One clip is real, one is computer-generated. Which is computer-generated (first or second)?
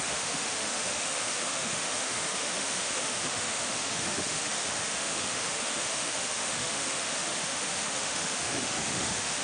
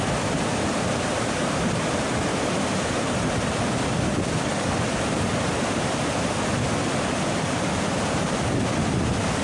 first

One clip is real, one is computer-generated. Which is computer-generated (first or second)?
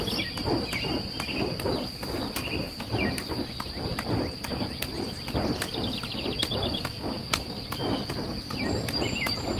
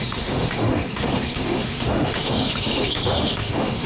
second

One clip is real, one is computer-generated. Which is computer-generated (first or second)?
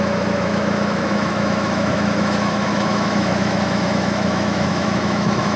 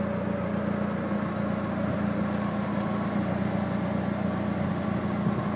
first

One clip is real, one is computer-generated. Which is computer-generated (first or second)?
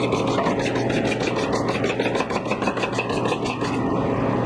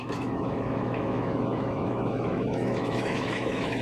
second